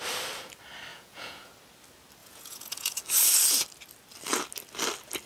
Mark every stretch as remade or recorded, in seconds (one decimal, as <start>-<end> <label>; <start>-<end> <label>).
0.0-0.9 recorded; 0.9-1.5 remade; 1.5-2.2 recorded; 2.2-3.0 remade; 3.0-5.3 recorded